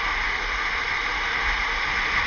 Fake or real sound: real